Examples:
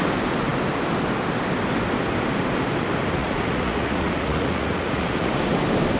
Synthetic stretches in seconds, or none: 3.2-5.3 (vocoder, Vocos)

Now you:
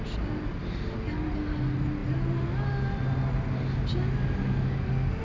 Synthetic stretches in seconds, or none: none

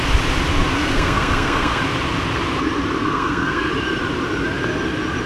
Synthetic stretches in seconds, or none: 0.8-1.8 (codec, SNAC); 3.0-3.7

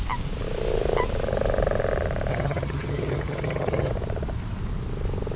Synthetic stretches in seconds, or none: 2.3-3.9 (vocoder, HiFi-GAN)

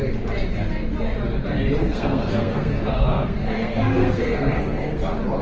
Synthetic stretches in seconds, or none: 1.8-5.0 (codec, SNAC)

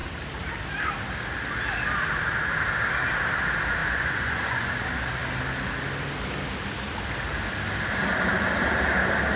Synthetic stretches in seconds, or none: 3.8-4.7 (vocoder, Vocos)

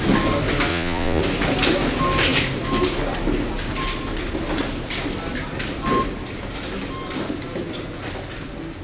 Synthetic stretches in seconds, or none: 0.7-1.2 (vocoder, Vocos)

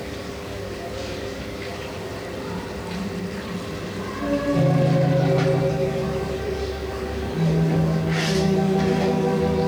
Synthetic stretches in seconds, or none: 0.0-2.1 (codec, DAC); 5.7-9.7